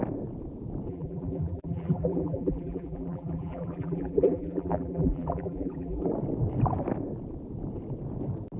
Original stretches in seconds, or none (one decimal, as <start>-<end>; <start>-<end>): 0.0-0.9; 6.1-8.6